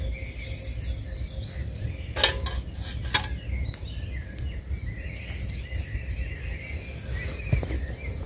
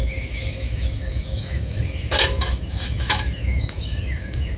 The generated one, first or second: second